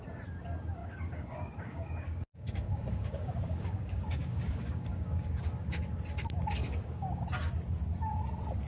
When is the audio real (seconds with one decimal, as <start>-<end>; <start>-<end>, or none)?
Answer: 0.0-0.8; 5.8-6.6; 7.2-8.7